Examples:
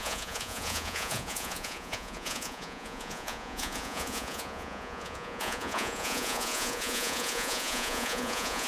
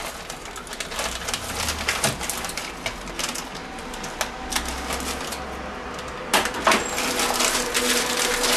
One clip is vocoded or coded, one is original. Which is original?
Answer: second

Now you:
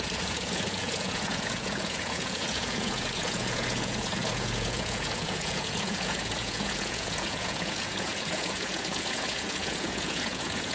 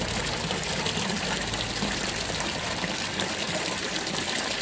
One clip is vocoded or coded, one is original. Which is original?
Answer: second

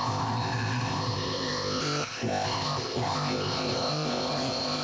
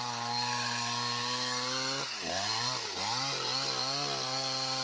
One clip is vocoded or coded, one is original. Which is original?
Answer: second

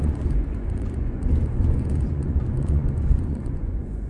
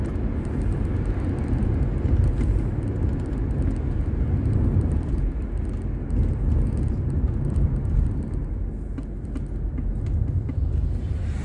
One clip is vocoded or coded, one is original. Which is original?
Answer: second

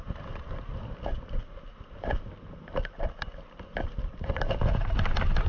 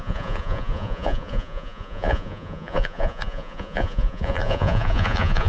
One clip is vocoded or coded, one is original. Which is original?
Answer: first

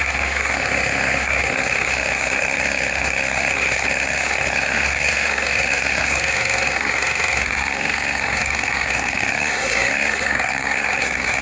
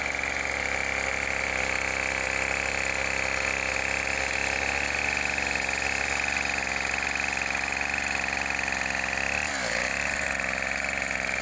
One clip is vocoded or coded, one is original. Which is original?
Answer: second